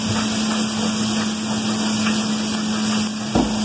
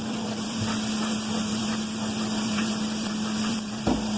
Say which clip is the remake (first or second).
second